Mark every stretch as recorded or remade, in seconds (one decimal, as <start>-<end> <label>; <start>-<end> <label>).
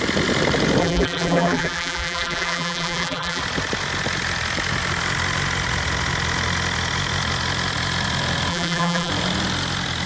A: 0.0-0.8 recorded; 0.8-3.4 remade; 3.4-8.5 recorded; 8.5-9.1 remade; 9.1-10.1 recorded